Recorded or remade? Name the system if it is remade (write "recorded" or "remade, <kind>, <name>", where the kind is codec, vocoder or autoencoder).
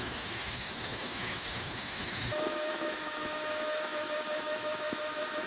remade, autoencoder, DAC-VAE